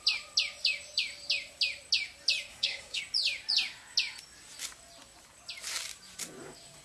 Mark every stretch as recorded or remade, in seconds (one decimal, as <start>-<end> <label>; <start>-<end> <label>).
0.0-2.5 recorded; 2.5-3.0 remade; 3.0-6.8 recorded